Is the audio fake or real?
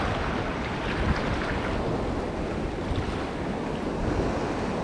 real